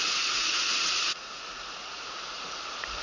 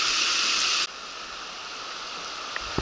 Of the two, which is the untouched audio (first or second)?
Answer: second